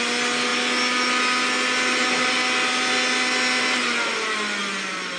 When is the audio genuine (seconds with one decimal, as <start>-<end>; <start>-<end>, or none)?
0.0-5.2